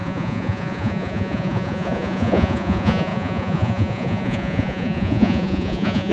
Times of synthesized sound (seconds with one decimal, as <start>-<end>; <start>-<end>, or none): 0.0-6.1